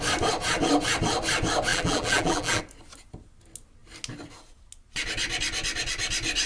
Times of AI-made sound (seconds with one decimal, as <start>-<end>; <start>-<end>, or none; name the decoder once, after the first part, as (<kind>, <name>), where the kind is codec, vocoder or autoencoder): 1.7-2.6 (vocoder, BigVGAN v2)